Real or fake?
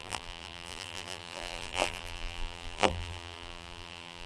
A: fake